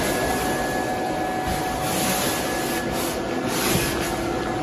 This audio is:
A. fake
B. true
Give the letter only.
B